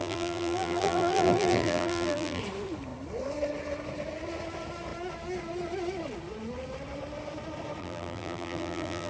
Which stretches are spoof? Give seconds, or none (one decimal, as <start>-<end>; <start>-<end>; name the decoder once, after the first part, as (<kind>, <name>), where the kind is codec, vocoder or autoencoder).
0.0-2.4 (vocoder, BigVGAN v2); 7.8-9.1